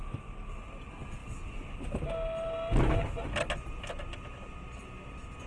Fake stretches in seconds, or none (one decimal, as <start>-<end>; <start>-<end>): none